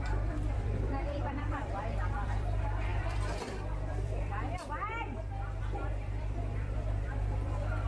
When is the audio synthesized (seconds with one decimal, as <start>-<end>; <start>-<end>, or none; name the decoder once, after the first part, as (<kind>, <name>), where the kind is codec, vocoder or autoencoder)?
0.0-7.9 (vocoder, BigVGAN v2)

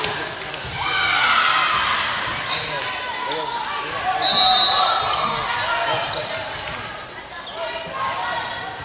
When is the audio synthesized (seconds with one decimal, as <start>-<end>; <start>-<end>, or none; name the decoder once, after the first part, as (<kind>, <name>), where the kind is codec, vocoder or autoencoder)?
6.2-7.2 (vocoder, BigVGAN v2)

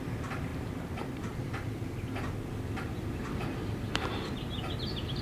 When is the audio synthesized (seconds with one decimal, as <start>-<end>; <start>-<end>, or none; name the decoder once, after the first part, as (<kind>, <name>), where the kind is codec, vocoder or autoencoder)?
0.5-1.2 (vocoder, BigVGAN v2); 2.9-5.2

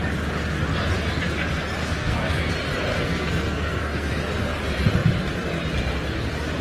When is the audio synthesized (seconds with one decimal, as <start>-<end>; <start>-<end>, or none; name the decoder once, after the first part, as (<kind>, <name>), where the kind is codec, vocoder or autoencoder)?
1.8-2.5 (codec, SNAC); 2.9-4.1

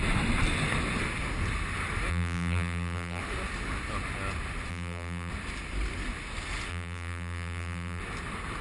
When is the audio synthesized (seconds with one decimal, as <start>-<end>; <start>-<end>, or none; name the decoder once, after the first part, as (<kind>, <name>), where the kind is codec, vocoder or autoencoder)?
2.1-3.2 (vocoder, BigVGAN v2); 4.7-5.3; 6.7-8.0

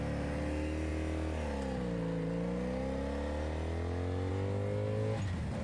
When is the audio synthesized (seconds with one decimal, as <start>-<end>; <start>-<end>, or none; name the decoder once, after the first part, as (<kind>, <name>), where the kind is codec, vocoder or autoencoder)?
none

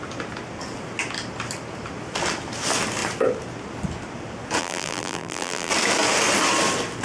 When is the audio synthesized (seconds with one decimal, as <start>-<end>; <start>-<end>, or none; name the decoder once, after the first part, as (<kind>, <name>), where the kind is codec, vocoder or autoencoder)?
4.6-5.7 (vocoder, BigVGAN v2)

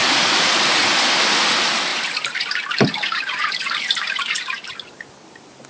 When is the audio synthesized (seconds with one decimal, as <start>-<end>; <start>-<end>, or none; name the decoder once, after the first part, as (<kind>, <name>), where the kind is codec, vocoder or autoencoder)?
1.9-4.7 (vocoder, BigVGAN v2)